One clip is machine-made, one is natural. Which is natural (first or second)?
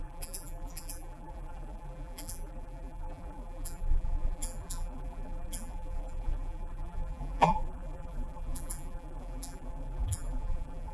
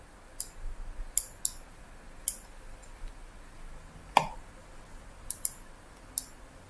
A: second